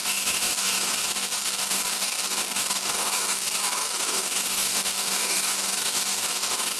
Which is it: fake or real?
fake